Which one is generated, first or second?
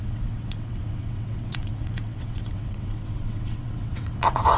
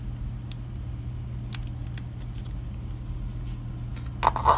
first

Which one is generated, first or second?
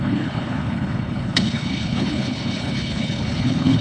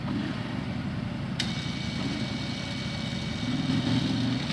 first